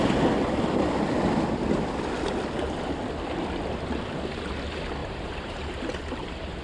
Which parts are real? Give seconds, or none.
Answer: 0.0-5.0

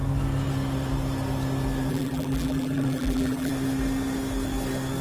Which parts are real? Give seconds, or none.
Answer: 0.0-1.9; 3.5-5.0